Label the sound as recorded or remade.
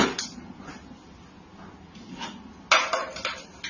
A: recorded